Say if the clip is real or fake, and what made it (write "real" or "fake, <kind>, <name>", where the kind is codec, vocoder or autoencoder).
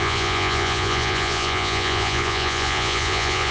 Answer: fake, vocoder, Vocos